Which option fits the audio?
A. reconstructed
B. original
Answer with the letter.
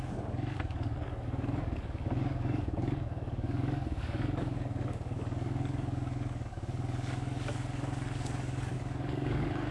A